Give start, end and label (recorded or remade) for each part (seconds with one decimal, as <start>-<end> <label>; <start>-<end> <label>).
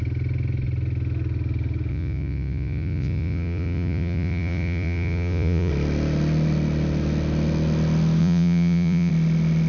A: 0.0-1.9 recorded; 1.9-5.7 remade; 5.7-8.2 recorded; 8.2-9.1 remade; 9.1-9.7 recorded